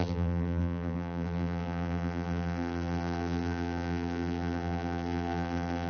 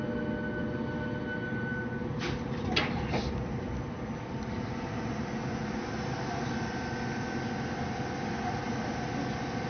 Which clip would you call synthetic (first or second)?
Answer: first